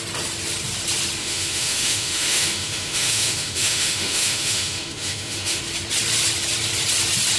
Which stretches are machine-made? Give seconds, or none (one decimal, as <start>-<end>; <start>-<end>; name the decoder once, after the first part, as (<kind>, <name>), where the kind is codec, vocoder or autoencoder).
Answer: 1.2-5.6 (autoencoder, DAC-VAE)